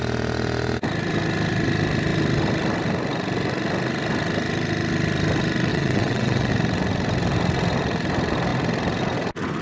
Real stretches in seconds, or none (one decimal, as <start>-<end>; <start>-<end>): 0.0-5.7; 6.5-9.6